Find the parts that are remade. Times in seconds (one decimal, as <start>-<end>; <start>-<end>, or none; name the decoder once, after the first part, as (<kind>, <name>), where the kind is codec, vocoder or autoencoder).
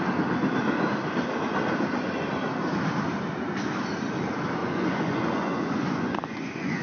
4.6-6.8 (vocoder, Vocos)